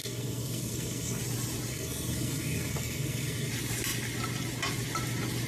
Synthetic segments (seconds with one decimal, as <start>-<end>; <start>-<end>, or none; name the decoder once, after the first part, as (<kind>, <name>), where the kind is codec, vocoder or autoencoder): 0.0-1.2 (codec, SNAC); 1.7-3.5